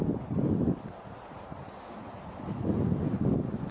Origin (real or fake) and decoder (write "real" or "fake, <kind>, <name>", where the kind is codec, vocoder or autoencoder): real